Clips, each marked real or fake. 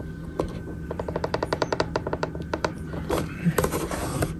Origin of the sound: fake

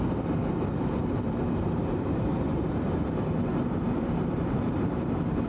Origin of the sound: fake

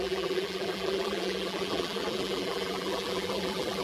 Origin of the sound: fake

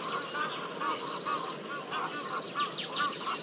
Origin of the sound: real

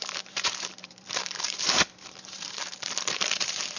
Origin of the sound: fake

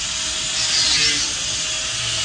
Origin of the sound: real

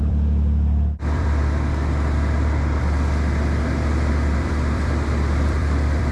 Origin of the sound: fake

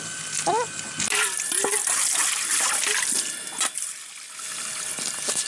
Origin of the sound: real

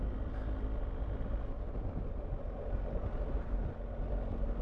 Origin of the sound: real